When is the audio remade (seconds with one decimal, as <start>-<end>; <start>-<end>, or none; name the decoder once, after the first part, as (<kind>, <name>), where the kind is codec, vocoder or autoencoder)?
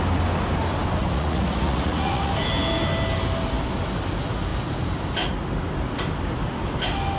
1.0-2.3 (vocoder, Vocos)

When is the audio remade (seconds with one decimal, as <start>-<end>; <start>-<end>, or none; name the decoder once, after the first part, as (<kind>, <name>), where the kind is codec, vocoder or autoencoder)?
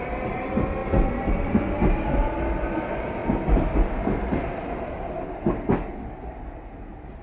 3.2-4.9 (vocoder, BigVGAN v2)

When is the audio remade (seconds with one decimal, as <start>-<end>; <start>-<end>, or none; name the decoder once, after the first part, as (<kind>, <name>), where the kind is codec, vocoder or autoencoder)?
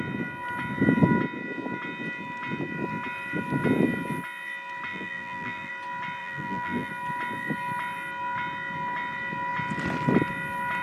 4.9-5.7 (vocoder, BigVGAN v2); 6.2-6.9